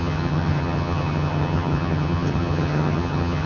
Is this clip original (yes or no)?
no